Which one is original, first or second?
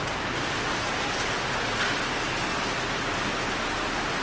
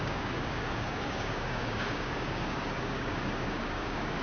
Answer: first